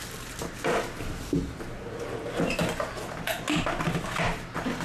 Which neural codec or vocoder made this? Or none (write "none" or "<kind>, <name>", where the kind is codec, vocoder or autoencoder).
none